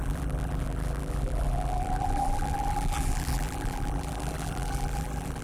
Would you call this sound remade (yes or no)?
yes